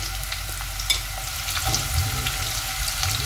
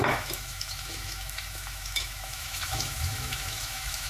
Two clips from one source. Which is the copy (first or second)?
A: second